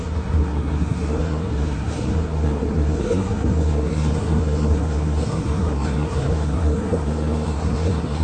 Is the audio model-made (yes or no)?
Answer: yes